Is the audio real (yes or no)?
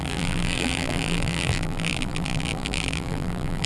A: no